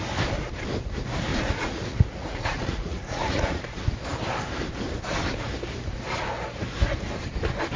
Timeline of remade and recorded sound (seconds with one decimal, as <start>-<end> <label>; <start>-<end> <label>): 0.0-1.3 recorded; 1.3-3.6 remade; 3.6-7.8 recorded